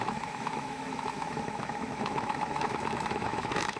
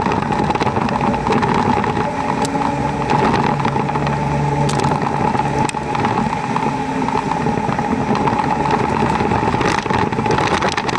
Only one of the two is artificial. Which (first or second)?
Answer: first